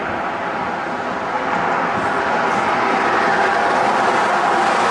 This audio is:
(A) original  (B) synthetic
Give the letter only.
A